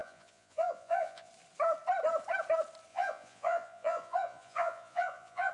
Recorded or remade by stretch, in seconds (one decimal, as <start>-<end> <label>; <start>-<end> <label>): 0.0-1.3 remade; 1.3-2.9 recorded; 2.9-5.5 remade